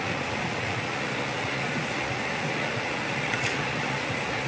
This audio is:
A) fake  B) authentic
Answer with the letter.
A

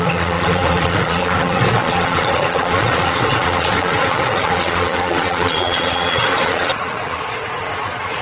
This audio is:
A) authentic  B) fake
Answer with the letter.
B